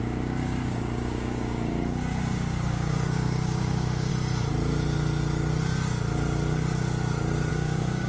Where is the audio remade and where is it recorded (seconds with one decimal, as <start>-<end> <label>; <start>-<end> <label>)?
0.0-4.1 remade; 4.1-7.5 recorded; 7.5-8.1 remade